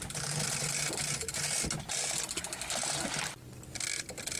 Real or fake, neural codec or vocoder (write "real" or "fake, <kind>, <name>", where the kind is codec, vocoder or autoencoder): real